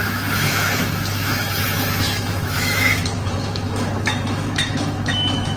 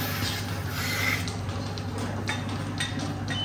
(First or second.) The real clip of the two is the second